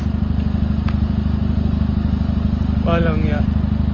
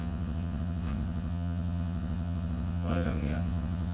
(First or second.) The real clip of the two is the first